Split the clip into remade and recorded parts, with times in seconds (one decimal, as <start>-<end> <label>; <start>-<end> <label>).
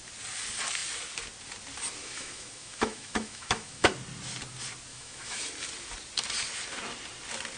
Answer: 0.0-2.0 recorded; 2.0-3.9 remade; 3.9-4.9 recorded; 4.9-5.4 remade; 5.4-7.6 recorded